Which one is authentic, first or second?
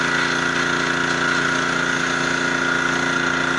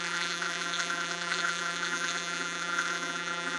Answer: first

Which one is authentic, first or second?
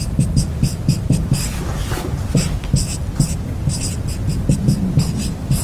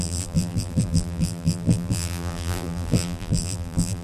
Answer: first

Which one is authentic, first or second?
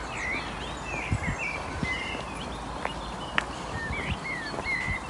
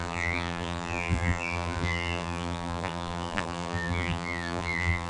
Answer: first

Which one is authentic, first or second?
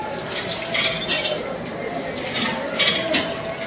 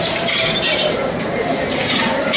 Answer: first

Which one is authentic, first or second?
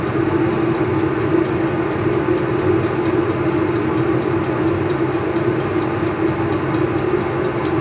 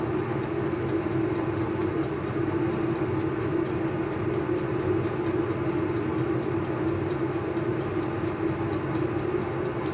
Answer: first